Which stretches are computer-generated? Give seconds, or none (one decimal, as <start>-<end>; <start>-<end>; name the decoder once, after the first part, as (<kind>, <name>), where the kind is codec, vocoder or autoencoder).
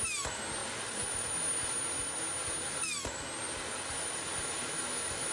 none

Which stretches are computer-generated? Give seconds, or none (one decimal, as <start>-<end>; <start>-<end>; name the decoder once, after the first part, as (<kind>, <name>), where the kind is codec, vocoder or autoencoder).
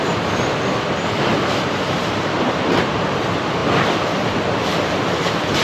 1.3-3.2 (vocoder, BigVGAN v2)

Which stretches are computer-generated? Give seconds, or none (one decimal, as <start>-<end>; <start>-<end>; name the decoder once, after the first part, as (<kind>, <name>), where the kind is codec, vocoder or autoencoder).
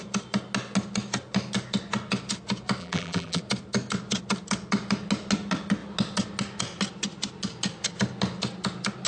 2.8-3.4 (vocoder, BigVGAN v2)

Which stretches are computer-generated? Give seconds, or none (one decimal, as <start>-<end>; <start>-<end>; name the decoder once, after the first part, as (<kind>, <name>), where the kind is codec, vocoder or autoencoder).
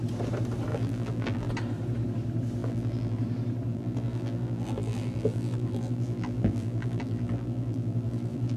0.7-1.5 (vocoder, BigVGAN v2); 2.6-3.2; 3.7-8.6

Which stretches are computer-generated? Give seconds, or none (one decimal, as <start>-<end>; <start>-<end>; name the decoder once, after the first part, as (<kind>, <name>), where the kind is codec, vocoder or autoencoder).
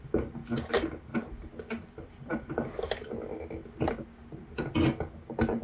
1.1-3.7 (vocoder, BigVGAN v2)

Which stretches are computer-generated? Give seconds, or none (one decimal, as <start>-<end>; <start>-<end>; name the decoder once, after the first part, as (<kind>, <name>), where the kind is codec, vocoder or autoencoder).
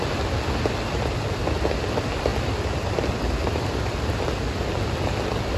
none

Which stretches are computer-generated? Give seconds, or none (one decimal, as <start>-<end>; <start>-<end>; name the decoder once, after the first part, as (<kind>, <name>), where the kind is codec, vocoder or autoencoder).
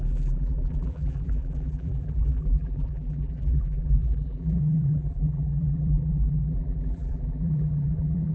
0.0-8.3 (vocoder, BigVGAN v2)